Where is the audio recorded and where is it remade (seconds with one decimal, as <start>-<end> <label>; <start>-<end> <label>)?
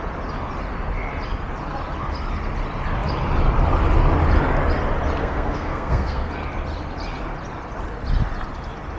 0.0-5.2 recorded; 5.2-6.3 remade; 6.3-9.0 recorded